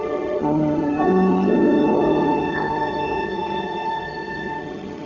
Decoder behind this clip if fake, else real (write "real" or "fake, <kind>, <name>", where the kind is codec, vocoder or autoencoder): fake, vocoder, HiFi-GAN